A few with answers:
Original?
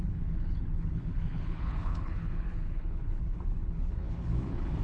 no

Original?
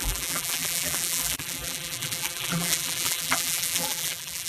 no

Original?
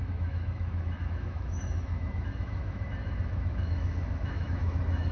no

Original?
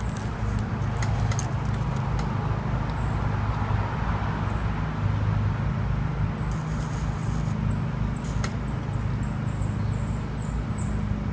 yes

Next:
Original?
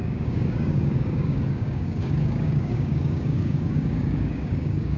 no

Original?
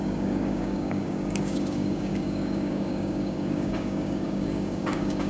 no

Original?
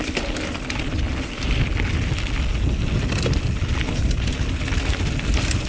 yes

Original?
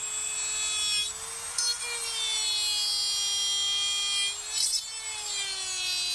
yes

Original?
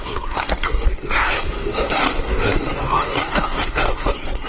no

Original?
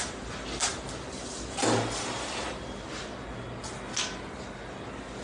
yes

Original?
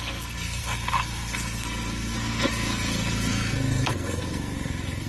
no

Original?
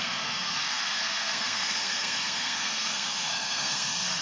no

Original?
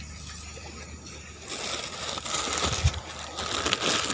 yes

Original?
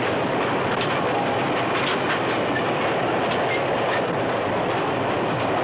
yes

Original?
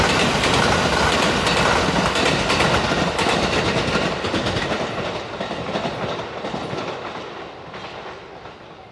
yes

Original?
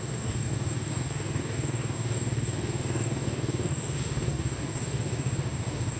no